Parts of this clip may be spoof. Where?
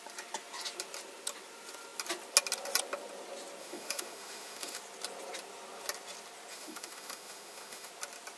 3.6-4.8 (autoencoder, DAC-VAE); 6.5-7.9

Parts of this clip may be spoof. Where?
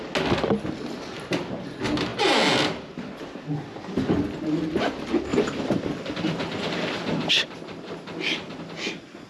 5.3-7.3 (vocoder, BigVGAN v2)